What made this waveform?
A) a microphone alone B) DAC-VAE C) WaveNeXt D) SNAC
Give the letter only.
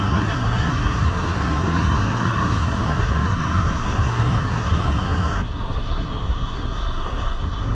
D